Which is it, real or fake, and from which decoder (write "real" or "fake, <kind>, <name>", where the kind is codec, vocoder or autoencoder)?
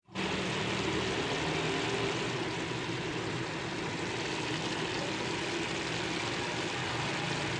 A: real